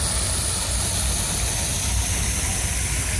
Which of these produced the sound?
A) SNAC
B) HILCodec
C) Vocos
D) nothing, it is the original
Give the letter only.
D